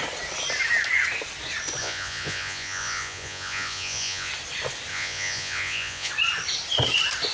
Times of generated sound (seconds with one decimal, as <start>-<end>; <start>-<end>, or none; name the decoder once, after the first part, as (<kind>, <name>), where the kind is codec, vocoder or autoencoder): 1.8-4.3 (vocoder, Vocos); 4.9-6.1